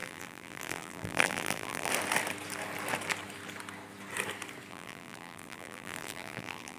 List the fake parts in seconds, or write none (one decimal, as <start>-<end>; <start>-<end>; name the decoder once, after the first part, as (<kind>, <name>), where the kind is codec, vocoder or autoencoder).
0.0-1.9 (vocoder, BigVGAN v2); 4.7-6.8